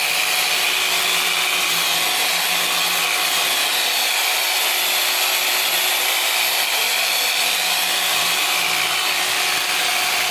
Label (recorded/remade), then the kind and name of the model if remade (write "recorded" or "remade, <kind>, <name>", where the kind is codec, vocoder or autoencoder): recorded